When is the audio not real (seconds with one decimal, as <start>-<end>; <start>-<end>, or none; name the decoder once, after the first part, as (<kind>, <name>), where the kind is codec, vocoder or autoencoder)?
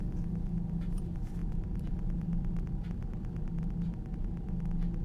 1.4-4.1 (vocoder, BigVGAN v2)